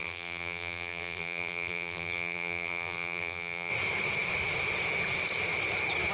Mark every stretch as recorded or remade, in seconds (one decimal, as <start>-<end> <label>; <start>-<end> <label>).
0.0-3.7 remade; 3.7-6.1 recorded